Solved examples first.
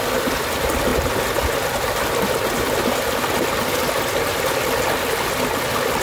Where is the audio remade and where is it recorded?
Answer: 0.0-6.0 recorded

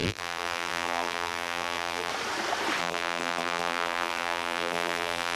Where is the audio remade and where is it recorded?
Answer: 0.0-2.1 remade; 2.1-2.8 recorded; 2.8-5.4 remade